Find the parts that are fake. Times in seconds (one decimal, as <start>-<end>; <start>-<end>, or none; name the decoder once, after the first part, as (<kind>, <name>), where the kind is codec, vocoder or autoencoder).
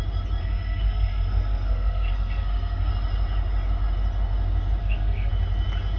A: 0.4-2.9 (codec, SNAC); 4.8-5.3